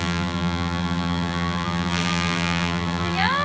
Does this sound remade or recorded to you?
remade